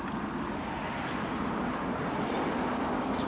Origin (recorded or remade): recorded